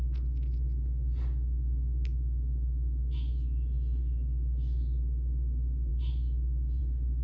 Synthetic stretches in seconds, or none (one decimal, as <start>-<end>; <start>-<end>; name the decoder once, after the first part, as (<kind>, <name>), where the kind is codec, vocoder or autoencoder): none